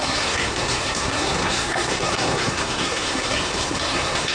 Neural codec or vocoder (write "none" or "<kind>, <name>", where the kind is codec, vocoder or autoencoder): codec, SNAC